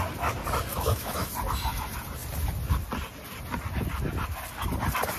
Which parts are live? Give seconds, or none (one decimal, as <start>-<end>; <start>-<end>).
0.0-0.7; 1.3-5.2